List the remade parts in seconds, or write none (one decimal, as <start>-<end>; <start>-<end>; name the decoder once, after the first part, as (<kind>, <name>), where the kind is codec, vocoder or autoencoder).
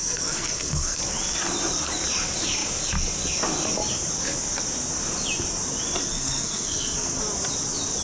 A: 0.0-1.0 (codec, SNAC); 6.0-7.2